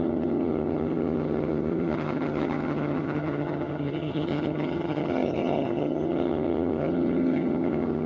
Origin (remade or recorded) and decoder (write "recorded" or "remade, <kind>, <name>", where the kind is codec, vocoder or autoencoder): remade, vocoder, HiFi-GAN